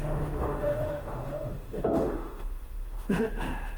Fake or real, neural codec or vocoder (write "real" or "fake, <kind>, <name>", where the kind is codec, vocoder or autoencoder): fake, autoencoder, DAC-VAE